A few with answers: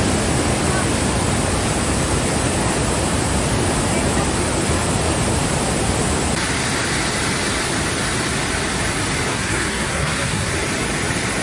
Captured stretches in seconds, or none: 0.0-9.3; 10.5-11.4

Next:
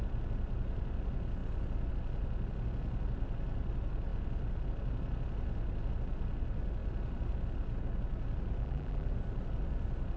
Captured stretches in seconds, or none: 0.0-8.6; 9.1-10.2

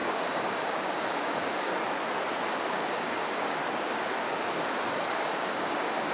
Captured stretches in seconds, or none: 1.7-2.5; 3.6-4.5

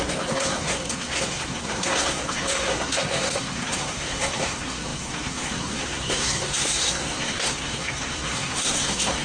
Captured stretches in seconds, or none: none

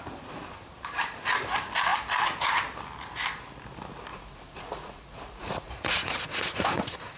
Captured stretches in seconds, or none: 0.0-4.1